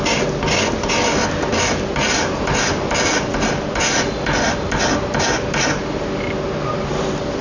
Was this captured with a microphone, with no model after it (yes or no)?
yes